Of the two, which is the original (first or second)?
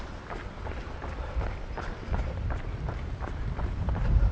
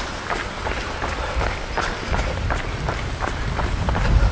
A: second